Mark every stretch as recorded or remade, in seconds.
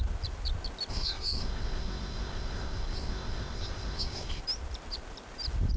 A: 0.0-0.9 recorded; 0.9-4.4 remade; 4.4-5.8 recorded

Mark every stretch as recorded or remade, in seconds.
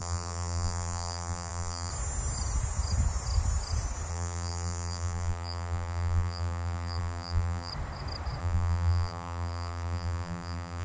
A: 0.0-1.9 remade; 1.9-4.1 recorded; 4.1-7.7 remade; 7.7-8.4 recorded; 8.4-10.8 remade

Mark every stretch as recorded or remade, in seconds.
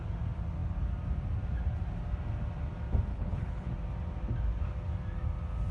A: 0.0-3.1 recorded; 3.1-3.7 remade; 3.7-5.7 recorded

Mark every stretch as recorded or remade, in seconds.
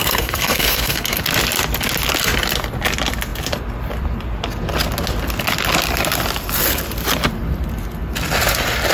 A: 0.0-1.2 remade; 1.2-8.9 recorded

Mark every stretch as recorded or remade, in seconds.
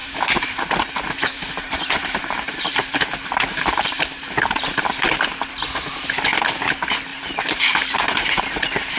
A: 0.0-4.8 remade; 4.8-7.1 recorded; 7.1-8.4 remade; 8.4-9.0 recorded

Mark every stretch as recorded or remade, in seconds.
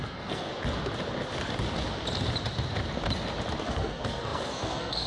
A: 0.0-0.5 remade; 0.5-3.6 recorded; 3.6-5.1 remade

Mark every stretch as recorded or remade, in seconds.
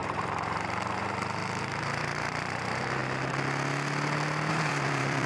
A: 0.0-3.0 remade; 3.0-4.5 recorded; 4.5-5.3 remade